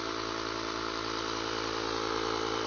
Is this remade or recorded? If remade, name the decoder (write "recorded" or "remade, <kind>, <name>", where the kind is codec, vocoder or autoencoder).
recorded